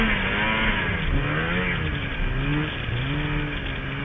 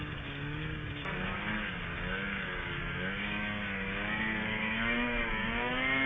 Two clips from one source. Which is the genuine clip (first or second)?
first